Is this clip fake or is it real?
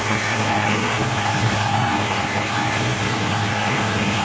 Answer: fake